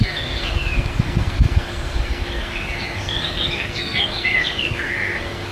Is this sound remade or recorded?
remade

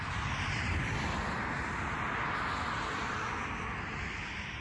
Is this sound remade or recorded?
recorded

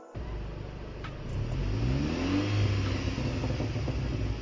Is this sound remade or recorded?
recorded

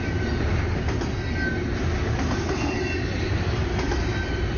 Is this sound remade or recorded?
recorded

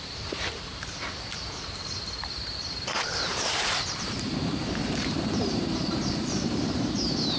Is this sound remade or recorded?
remade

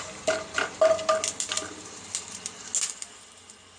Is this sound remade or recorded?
recorded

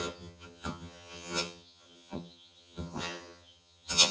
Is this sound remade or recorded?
remade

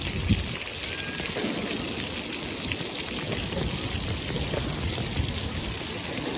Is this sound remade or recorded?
recorded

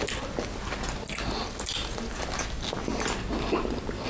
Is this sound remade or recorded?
recorded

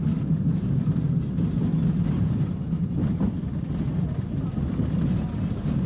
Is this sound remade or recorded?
recorded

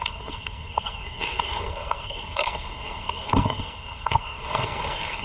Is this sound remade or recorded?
remade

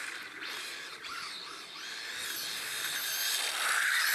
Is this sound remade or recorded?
recorded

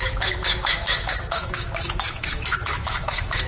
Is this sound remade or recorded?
remade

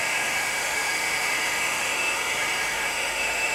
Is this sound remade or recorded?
remade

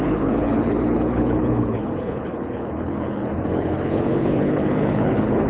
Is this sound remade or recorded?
remade